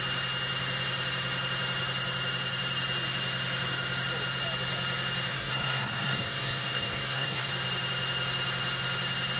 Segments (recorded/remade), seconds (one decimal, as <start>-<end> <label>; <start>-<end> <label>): 0.0-5.3 recorded; 5.3-7.5 remade; 7.5-9.4 recorded